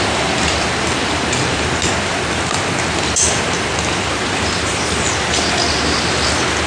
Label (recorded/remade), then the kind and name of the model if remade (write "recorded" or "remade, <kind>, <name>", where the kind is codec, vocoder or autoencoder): recorded